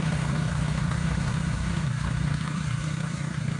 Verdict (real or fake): fake